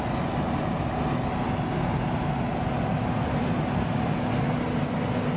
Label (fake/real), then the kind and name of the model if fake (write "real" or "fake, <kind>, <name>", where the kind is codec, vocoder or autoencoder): real